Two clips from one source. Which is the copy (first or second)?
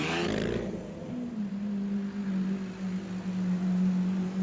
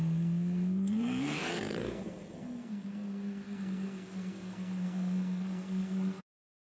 second